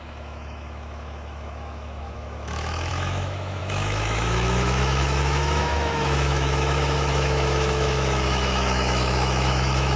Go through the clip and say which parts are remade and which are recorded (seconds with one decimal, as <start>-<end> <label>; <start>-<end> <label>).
0.0-10.0 remade